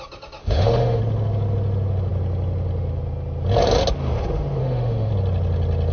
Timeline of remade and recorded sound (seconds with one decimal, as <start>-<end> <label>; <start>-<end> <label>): 0.0-0.4 recorded; 0.4-1.0 remade; 1.0-4.6 recorded; 4.6-5.1 remade; 5.1-5.9 recorded